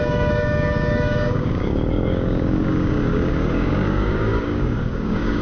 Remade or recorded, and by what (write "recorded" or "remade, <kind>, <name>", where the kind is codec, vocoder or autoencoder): remade, codec, DAC